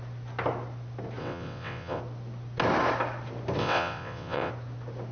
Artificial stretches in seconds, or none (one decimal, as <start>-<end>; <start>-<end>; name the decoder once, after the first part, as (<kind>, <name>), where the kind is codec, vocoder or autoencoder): 1.2-2.0 (vocoder, WaveNeXt); 3.6-4.5